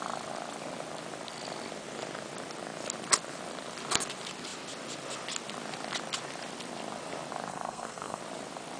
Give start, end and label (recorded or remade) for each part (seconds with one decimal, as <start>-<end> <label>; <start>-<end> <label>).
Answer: 0.0-7.5 recorded; 7.5-8.2 remade; 8.2-8.8 recorded